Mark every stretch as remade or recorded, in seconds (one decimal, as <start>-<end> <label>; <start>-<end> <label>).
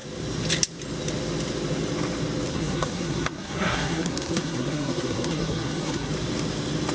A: 0.0-2.5 recorded; 2.5-6.1 remade; 6.1-6.9 recorded